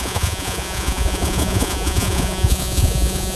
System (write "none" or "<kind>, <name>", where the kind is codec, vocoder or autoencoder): vocoder, Vocos